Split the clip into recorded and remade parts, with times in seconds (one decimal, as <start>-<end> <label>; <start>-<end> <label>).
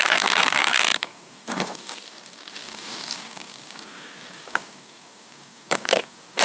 0.0-6.4 remade